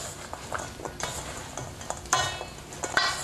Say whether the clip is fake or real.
real